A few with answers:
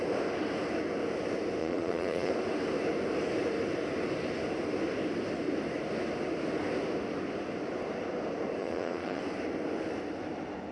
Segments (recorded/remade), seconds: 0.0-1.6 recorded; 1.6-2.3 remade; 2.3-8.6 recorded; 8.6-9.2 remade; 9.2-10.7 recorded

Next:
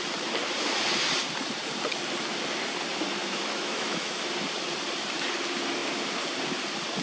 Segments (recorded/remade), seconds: 0.0-3.2 recorded; 3.2-4.2 remade; 4.2-7.0 recorded

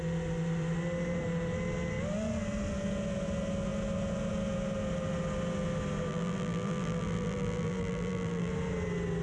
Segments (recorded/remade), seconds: 0.0-6.1 recorded; 6.1-8.5 remade; 8.5-9.2 recorded

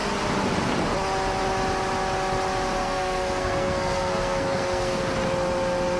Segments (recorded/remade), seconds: 0.0-2.8 recorded; 2.8-5.0 remade; 5.0-6.0 recorded

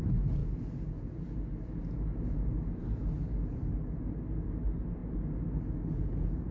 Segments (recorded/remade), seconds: 0.0-6.5 recorded